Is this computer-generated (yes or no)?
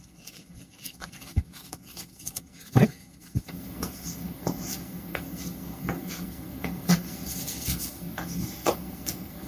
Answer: yes